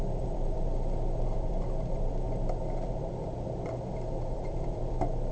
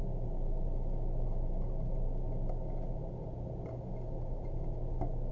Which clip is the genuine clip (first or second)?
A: second